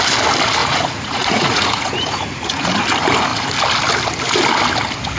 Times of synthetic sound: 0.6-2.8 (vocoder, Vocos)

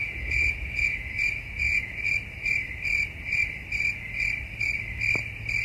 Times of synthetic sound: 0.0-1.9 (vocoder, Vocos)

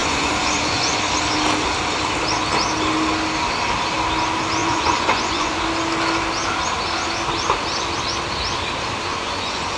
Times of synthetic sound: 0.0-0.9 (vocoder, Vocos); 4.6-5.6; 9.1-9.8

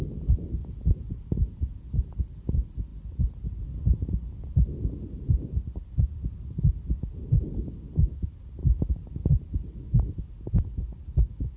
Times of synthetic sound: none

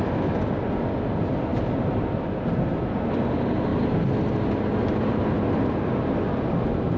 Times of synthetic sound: none

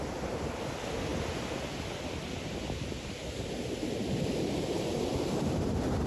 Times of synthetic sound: none

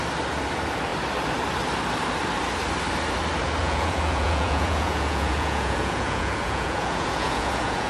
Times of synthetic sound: 3.6-7.9 (vocoder, Vocos)